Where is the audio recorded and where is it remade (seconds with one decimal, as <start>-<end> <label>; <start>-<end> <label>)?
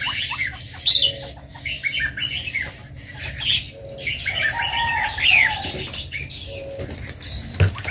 0.0-7.9 recorded